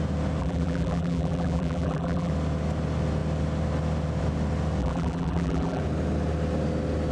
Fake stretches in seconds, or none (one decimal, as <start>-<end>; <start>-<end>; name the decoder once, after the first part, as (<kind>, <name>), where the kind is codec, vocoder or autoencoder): 0.4-2.3 (vocoder, BigVGAN v2); 4.8-5.8

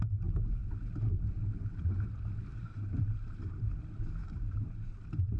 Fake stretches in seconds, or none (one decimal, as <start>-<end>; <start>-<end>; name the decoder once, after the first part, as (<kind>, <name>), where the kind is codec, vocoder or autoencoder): 2.5-3.7 (vocoder, BigVGAN v2); 4.2-4.8

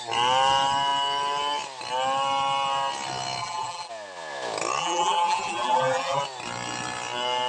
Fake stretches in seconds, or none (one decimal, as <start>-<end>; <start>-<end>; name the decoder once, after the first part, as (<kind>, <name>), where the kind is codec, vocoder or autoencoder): 3.4-3.9 (vocoder, BigVGAN v2); 4.8-6.2

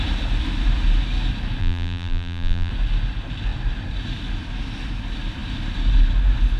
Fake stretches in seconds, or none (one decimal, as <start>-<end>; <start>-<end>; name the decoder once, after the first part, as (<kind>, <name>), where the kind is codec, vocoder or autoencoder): 1.6-2.7 (vocoder, BigVGAN v2)

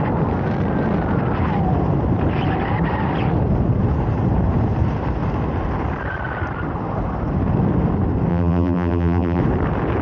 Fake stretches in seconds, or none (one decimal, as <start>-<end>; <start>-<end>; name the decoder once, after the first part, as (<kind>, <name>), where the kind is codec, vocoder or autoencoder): 8.3-9.4 (vocoder, BigVGAN v2)